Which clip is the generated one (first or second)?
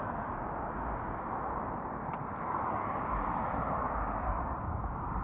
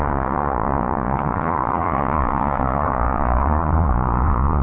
second